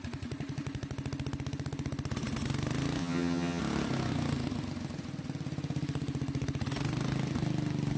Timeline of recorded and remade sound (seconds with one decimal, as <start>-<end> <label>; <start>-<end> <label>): 0.0-3.0 recorded; 3.0-3.6 remade; 3.6-8.0 recorded